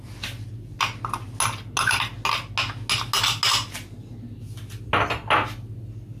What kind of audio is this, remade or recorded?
recorded